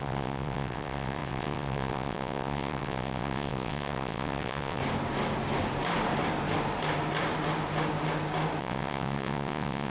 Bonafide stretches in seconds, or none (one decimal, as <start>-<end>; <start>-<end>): 4.8-8.6

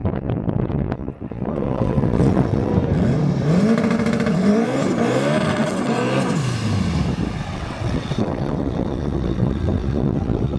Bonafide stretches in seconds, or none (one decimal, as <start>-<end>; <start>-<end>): 2.7-5.5; 6.0-7.5

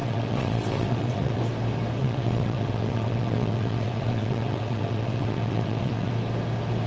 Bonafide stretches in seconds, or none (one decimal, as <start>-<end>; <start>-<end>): 1.4-2.0; 6.1-6.9

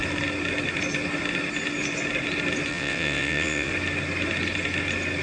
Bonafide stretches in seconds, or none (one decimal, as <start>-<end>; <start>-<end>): 0.0-2.7; 3.7-5.2

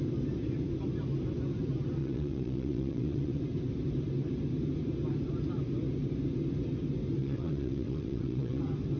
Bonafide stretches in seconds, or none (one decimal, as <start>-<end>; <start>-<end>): 0.0-2.0; 3.4-7.2; 8.6-9.0